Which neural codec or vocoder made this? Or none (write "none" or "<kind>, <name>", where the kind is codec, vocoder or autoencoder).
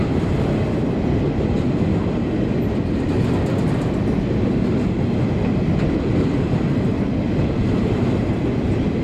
none